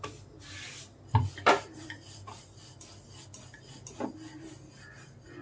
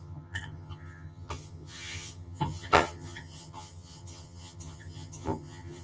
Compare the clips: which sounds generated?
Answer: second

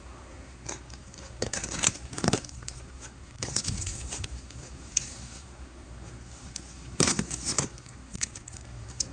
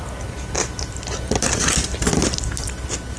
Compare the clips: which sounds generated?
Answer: first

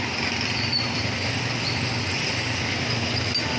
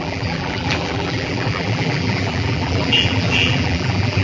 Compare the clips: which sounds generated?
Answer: second